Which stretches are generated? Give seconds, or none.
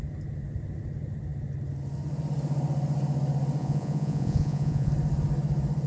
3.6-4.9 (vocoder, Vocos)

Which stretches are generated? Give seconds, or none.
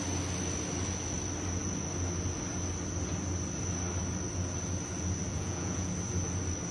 5.3-5.9 (vocoder, Vocos)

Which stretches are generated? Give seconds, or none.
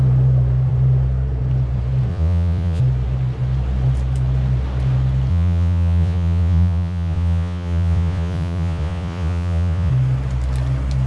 2.1-2.8 (vocoder, Vocos); 5.3-9.9